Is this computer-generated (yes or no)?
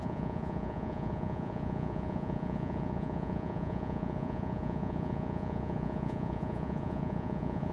yes